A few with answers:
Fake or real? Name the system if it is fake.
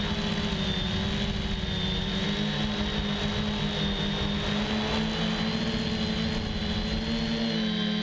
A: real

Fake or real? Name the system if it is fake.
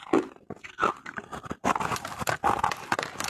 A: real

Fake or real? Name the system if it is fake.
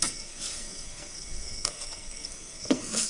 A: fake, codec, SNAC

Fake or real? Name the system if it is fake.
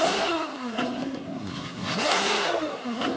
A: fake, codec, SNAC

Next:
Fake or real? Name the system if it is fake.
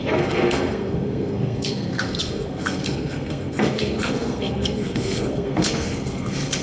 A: fake, codec, SNAC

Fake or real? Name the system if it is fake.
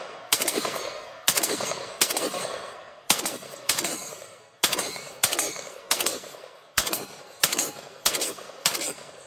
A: fake, codec, SNAC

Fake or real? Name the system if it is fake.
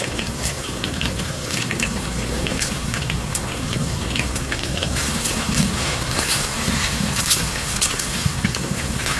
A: fake, codec, SNAC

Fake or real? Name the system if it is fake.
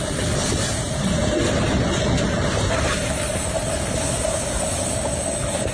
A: real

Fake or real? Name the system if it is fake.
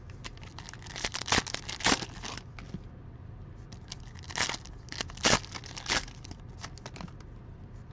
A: real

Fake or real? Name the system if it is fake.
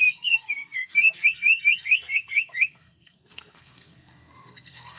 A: fake, codec, SNAC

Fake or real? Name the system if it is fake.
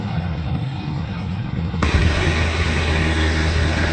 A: fake, codec, SNAC